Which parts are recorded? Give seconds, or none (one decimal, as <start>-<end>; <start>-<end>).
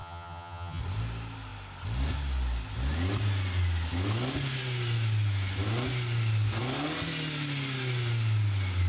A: 0.8-8.9